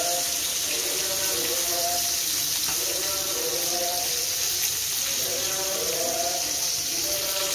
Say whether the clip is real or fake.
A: real